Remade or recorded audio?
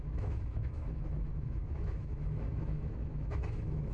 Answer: remade